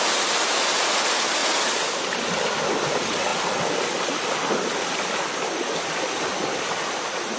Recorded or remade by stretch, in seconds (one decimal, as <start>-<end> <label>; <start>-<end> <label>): 0.0-7.4 recorded